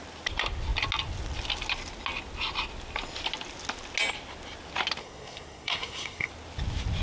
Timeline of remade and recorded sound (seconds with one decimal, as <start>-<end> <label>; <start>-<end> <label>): 0.0-5.0 recorded; 5.0-6.3 remade; 6.3-7.0 recorded